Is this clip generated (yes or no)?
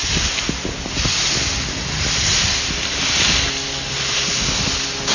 no